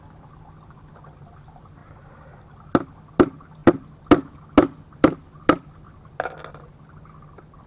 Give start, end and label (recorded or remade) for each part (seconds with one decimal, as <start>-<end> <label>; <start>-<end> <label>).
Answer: 0.0-7.7 recorded